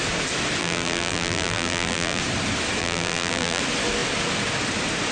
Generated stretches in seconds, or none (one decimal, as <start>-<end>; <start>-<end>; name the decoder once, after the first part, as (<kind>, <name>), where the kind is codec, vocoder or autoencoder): 0.6-2.2 (vocoder, BigVGAN v2); 2.8-3.6